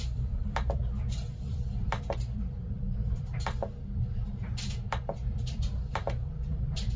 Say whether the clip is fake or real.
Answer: fake